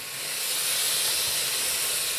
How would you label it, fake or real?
fake